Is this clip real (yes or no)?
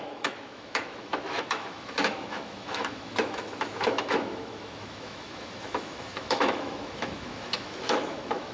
no